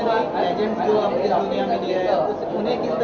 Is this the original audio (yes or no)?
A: yes